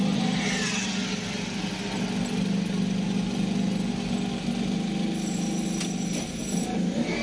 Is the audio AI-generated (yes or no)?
no